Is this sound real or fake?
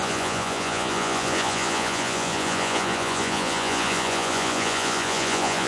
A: fake